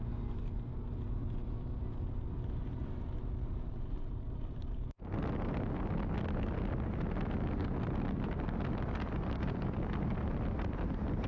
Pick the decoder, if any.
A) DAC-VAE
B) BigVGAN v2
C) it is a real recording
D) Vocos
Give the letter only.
C